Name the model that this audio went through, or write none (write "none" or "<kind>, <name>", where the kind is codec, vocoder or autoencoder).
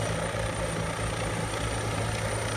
none